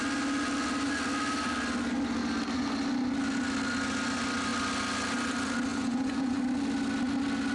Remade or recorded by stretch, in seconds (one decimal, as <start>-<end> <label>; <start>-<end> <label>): 0.0-5.7 recorded; 5.7-6.4 remade; 6.4-7.5 recorded